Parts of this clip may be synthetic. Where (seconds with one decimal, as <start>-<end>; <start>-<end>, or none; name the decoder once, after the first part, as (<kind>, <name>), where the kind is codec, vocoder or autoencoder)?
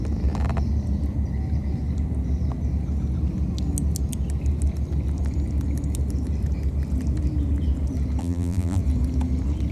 8.2-8.8 (vocoder, BigVGAN v2)